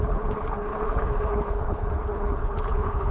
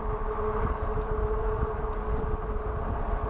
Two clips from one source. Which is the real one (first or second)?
second